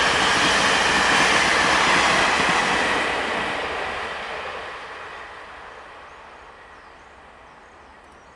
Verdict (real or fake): real